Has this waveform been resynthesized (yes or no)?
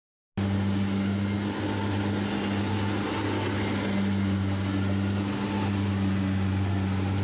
no